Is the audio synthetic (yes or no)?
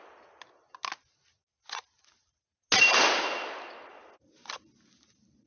no